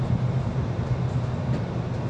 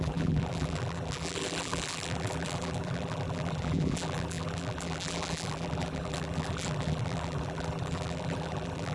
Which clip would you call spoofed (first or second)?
second